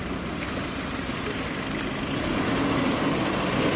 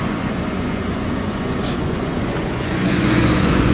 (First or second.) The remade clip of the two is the second